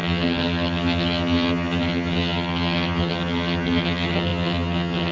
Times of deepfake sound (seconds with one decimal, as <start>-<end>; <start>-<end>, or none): 0.0-5.1